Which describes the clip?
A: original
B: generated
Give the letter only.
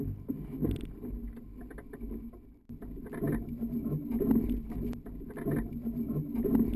A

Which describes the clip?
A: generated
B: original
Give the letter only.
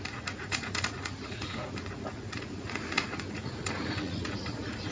A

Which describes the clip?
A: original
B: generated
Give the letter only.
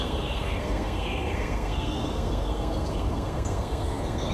B